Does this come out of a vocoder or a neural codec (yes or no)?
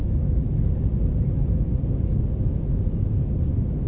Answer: no